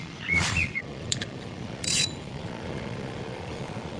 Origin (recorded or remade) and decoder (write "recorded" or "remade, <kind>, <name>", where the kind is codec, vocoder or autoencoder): remade, vocoder, Vocos